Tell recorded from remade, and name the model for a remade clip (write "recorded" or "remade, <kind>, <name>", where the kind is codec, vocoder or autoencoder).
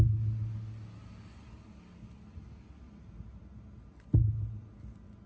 recorded